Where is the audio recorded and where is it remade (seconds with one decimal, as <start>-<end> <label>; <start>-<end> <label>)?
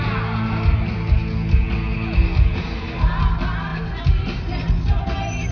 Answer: 0.0-5.5 recorded